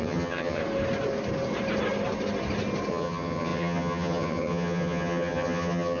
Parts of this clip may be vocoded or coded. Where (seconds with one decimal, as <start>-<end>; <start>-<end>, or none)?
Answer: 0.0-0.6; 2.9-6.0

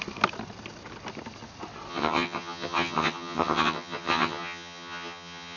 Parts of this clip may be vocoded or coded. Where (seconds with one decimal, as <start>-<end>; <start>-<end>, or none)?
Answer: 1.9-5.6